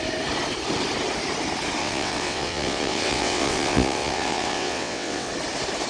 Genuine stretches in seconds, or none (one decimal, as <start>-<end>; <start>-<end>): 0.0-1.8; 5.3-5.9